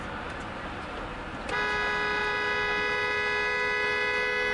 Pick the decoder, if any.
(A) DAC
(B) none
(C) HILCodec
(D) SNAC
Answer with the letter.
B